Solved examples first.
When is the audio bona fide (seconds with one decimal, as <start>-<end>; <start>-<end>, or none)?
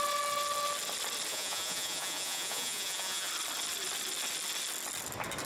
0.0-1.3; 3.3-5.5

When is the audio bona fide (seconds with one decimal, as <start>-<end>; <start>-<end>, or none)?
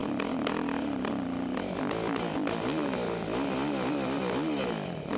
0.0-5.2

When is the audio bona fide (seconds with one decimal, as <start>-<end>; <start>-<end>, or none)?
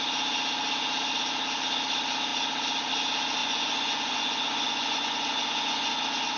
0.0-3.4; 5.9-6.4